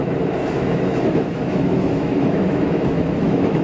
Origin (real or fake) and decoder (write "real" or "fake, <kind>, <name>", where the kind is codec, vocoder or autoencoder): fake, autoencoder, DAC-VAE